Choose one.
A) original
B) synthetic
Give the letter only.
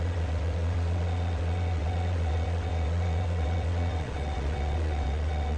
B